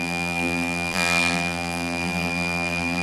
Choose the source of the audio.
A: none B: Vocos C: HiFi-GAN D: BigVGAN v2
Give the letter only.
D